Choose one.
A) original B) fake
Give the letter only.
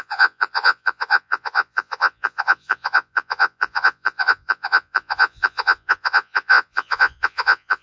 B